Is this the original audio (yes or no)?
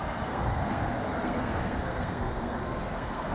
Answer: no